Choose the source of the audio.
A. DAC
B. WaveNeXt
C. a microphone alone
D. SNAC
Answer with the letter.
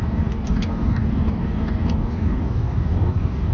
A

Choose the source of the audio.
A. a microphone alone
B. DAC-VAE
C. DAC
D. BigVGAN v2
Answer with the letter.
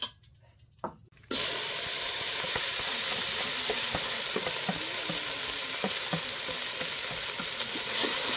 A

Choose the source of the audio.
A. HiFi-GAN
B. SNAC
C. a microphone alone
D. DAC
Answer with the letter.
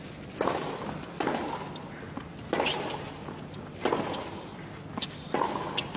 C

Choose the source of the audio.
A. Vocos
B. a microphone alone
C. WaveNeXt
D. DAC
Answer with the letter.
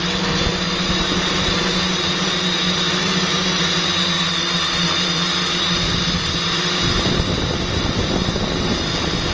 B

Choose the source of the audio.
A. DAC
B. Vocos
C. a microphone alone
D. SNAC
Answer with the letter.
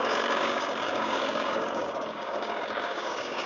A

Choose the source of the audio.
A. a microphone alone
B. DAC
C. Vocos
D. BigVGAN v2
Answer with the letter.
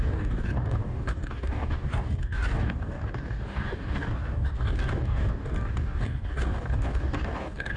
B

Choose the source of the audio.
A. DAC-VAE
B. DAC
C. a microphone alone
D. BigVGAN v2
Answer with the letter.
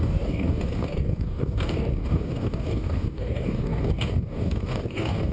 B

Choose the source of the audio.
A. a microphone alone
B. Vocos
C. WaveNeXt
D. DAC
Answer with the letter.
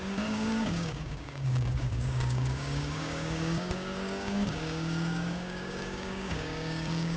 D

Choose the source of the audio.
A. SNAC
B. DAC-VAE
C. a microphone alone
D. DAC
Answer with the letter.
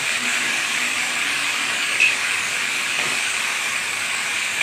D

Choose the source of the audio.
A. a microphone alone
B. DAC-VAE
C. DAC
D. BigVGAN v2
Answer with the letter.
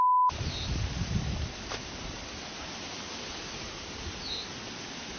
A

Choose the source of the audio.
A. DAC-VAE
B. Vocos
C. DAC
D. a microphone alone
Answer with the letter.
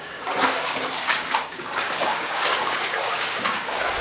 C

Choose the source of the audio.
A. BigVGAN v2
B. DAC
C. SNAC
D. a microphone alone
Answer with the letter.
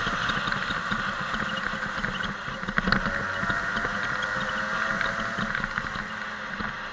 D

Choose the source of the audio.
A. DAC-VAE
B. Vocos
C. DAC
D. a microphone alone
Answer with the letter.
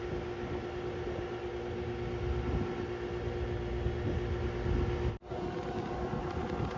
D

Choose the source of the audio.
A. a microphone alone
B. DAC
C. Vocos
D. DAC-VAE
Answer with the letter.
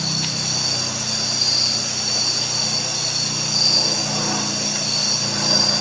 A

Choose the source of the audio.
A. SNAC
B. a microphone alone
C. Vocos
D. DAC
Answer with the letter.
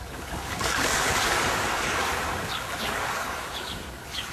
D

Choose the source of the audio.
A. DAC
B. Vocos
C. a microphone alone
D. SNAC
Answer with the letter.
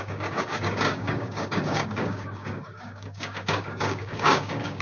A